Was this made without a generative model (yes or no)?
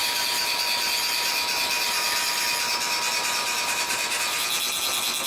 yes